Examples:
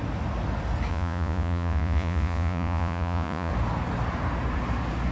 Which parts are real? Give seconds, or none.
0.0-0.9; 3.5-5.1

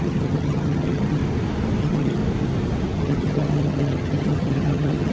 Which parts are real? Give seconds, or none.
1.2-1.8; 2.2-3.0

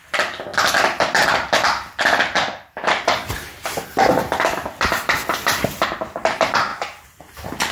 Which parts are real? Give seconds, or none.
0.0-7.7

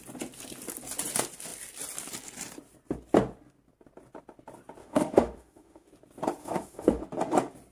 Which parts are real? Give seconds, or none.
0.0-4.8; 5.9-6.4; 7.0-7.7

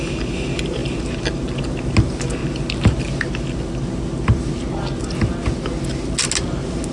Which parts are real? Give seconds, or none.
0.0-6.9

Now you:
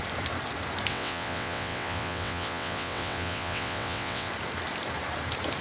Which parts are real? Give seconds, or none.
0.0-0.9; 4.3-5.6